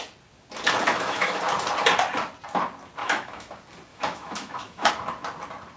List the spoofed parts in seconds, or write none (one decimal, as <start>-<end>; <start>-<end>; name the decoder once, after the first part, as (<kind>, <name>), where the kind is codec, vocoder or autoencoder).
0.9-1.4 (autoencoder, DAC-VAE); 3.0-3.5; 3.9-4.9

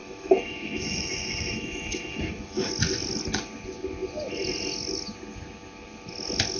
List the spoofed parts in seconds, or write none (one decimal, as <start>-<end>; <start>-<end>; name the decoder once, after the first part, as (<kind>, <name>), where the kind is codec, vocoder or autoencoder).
0.0-2.7 (autoencoder, DAC-VAE)